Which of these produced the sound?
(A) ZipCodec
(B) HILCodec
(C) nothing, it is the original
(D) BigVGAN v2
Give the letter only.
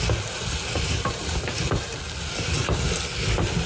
C